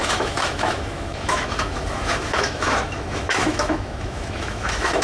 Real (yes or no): no